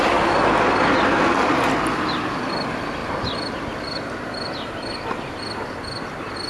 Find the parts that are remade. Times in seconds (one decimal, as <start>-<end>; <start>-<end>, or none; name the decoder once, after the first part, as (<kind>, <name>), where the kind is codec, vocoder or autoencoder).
none